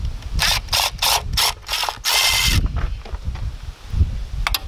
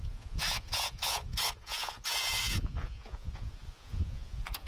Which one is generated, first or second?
second